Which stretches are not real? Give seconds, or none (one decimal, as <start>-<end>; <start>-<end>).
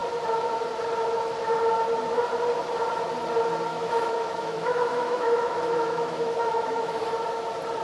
3.7-7.0